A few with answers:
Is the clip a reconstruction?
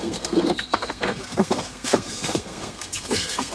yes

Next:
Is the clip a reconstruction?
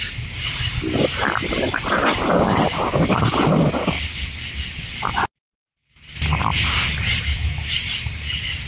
no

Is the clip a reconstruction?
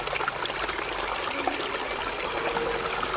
no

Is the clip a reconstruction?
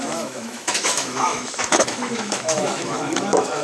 yes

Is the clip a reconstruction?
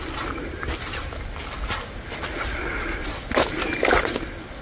no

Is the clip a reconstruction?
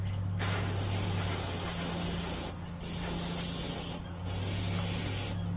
no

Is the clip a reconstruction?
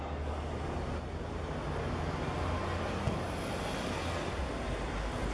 no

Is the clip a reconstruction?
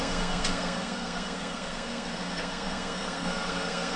yes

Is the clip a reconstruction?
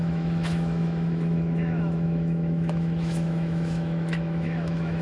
yes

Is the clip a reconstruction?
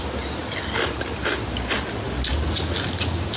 no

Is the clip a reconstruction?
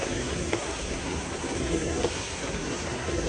yes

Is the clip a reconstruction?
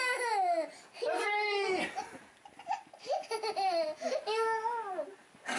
no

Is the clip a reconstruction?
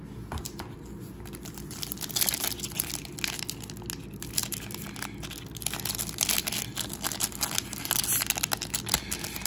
no